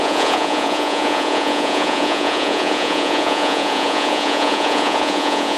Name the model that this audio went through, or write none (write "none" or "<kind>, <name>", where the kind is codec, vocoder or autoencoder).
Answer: vocoder, Vocos